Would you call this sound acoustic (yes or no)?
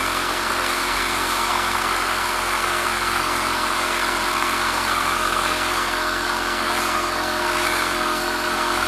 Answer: no